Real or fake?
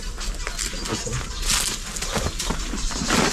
real